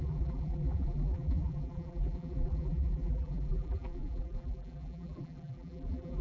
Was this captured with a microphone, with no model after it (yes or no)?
no